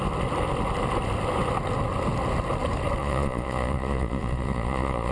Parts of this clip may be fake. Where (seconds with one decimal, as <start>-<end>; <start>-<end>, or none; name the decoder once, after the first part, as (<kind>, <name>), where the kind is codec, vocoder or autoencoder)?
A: 3.0-5.1 (vocoder, Vocos)